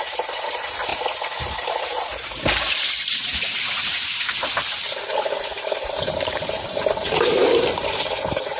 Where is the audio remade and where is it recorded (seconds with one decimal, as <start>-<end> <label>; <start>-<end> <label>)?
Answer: 0.0-8.6 remade